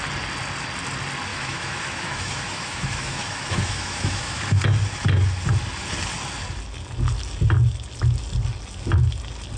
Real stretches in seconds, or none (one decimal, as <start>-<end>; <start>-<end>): 0.0-1.3; 4.4-9.6